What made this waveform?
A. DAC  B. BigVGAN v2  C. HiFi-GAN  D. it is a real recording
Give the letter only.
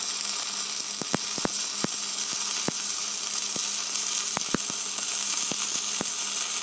D